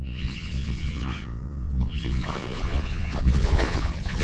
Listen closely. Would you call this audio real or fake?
fake